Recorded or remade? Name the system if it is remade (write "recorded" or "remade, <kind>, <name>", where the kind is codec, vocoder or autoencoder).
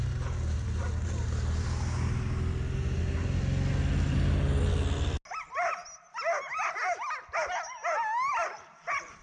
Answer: recorded